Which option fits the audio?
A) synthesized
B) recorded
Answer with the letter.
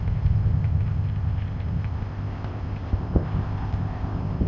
A